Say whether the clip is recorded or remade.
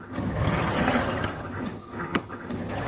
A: remade